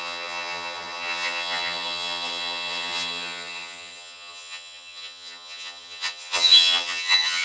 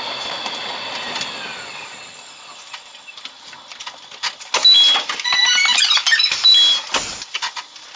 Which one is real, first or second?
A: second